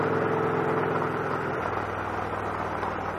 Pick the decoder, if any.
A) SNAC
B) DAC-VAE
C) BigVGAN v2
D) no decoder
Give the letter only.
D